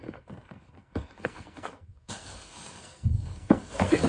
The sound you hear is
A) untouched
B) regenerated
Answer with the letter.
B